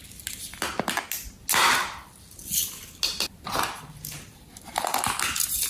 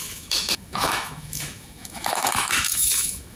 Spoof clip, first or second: second